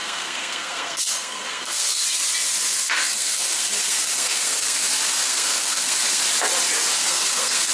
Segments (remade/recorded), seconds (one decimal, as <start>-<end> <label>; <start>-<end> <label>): 0.0-2.0 remade; 2.0-2.7 recorded; 2.7-6.2 remade; 6.2-7.0 recorded; 7.0-7.7 remade